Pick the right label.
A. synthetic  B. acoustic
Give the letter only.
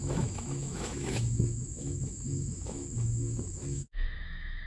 A